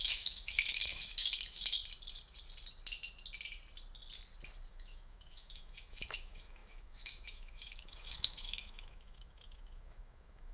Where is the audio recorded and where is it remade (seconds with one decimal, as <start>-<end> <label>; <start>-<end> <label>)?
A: 0.0-1.8 remade; 1.8-4.7 recorded; 4.7-10.5 remade